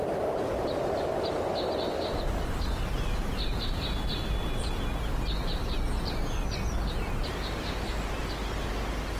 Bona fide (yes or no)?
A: yes